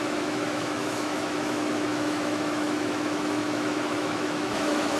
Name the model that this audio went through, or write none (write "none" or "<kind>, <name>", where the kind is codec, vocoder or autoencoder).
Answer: autoencoder, DAC-VAE